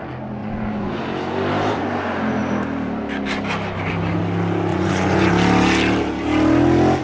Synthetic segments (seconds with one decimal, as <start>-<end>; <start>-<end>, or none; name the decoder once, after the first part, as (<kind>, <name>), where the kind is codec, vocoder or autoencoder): 0.4-1.0 (vocoder, Vocos); 4.7-5.3